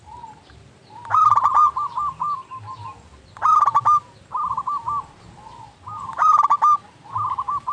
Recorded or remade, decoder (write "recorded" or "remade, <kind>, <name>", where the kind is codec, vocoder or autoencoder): recorded